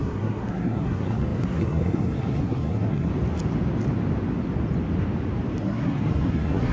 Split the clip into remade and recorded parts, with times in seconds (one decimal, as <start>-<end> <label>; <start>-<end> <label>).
0.0-3.1 remade; 3.1-5.6 recorded; 5.6-6.7 remade

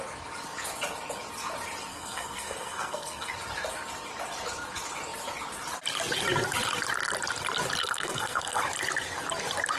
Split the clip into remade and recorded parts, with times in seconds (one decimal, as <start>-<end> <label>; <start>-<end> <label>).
0.0-1.9 recorded; 1.9-3.3 remade; 3.3-7.8 recorded; 7.8-8.6 remade; 8.6-9.8 recorded

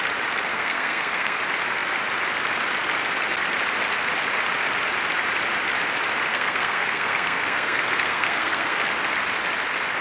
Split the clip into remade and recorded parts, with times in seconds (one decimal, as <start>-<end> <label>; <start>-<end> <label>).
0.0-0.5 recorded; 0.5-1.4 remade; 1.4-6.3 recorded; 6.3-8.9 remade; 8.9-10.0 recorded

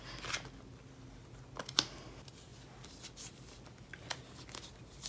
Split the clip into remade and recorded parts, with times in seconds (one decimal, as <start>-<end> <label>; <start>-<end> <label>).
0.0-5.1 recorded

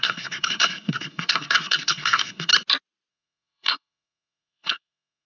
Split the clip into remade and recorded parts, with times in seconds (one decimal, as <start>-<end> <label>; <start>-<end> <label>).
0.0-2.5 remade; 2.5-3.1 recorded; 3.1-5.3 remade

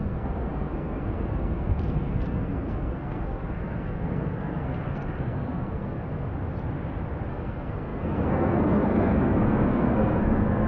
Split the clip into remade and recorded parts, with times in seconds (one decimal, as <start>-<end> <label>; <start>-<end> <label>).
0.0-6.3 remade; 6.3-7.3 recorded; 7.3-10.7 remade

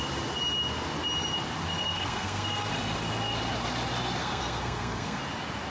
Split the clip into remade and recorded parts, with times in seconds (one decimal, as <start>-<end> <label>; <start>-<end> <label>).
0.0-1.8 recorded; 1.8-2.7 remade; 2.7-4.2 recorded; 4.2-5.2 remade; 5.2-5.7 recorded

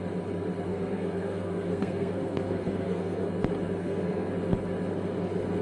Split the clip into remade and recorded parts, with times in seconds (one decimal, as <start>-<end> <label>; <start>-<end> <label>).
0.0-0.7 recorded; 0.7-3.3 remade; 3.3-3.8 recorded; 3.8-4.3 remade; 4.3-5.6 recorded